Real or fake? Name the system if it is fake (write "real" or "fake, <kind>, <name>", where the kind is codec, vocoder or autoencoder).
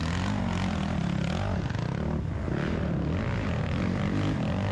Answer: real